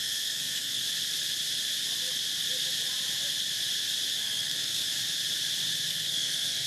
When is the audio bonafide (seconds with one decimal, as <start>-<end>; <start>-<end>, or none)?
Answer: 0.8-4.2; 4.9-5.9